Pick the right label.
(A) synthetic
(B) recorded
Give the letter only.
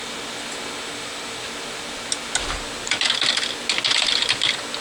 B